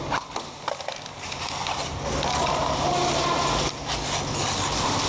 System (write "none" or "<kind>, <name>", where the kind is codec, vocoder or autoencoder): none